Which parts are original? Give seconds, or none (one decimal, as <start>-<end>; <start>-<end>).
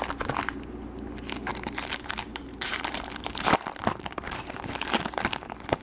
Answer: 0.0-1.5; 5.0-5.8